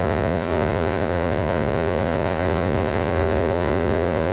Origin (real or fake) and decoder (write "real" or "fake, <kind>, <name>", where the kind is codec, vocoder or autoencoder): fake, vocoder, Vocos